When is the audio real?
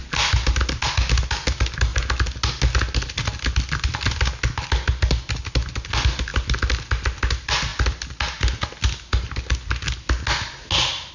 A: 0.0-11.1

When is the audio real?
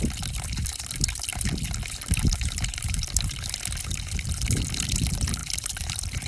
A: 0.0-6.3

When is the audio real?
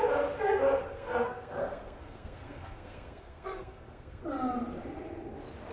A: 0.0-0.8; 4.2-5.7